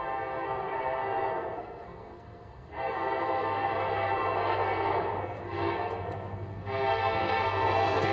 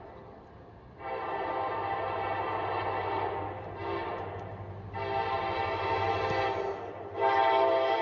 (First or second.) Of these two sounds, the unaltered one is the second